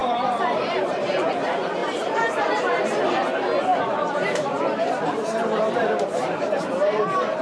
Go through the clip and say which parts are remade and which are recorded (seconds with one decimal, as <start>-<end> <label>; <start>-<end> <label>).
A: 0.0-1.3 remade; 1.3-1.8 recorded; 1.8-2.8 remade; 2.8-3.7 recorded; 3.7-7.0 remade; 7.0-7.4 recorded